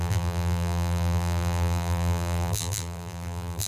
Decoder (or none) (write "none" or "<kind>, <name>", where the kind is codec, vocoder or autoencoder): vocoder, BigVGAN v2